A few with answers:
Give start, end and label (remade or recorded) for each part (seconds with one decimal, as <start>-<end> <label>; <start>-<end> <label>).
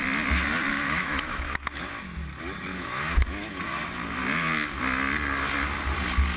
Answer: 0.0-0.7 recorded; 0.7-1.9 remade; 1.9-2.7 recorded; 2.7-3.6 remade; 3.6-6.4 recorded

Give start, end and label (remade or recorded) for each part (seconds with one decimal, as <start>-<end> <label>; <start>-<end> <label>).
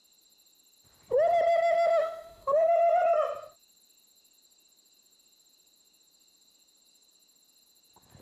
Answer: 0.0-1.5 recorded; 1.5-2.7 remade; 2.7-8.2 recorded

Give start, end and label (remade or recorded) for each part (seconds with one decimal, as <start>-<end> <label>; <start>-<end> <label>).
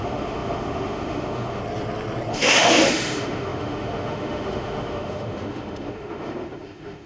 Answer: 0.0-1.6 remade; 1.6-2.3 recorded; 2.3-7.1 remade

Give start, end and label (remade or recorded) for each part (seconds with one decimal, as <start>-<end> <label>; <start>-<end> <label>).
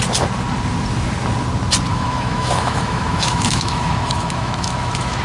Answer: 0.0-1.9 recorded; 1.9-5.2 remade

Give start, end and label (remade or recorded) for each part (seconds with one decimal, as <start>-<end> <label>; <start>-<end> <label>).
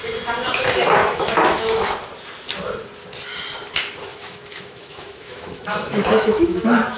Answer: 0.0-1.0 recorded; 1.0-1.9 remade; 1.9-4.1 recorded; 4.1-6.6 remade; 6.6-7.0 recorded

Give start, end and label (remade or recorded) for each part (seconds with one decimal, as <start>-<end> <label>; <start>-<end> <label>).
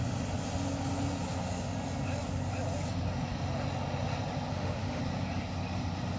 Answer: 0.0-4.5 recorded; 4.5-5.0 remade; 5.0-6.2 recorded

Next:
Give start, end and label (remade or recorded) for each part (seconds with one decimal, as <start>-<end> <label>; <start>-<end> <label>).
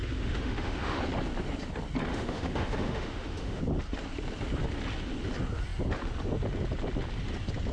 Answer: 0.0-1.0 remade; 1.0-2.1 recorded; 2.1-3.6 remade; 3.6-7.7 recorded